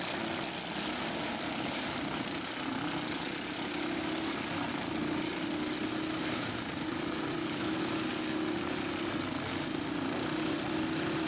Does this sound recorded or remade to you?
recorded